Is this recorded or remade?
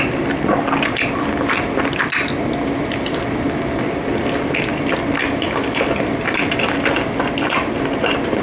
recorded